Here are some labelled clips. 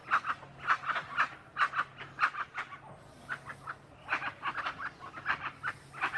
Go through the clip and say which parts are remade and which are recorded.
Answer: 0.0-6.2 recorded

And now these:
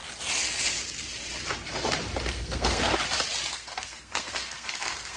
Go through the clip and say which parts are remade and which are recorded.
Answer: 0.0-2.3 recorded; 2.3-2.9 remade; 2.9-3.5 recorded; 3.5-5.2 remade